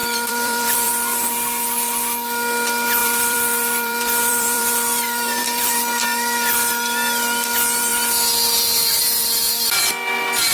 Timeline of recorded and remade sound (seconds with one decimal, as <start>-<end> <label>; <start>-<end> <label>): 0.0-0.9 remade; 0.9-3.0 recorded; 3.0-5.7 remade; 5.7-10.5 recorded